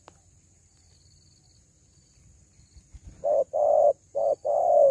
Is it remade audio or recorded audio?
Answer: recorded